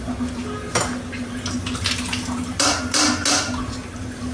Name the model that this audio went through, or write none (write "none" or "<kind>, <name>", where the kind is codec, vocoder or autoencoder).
none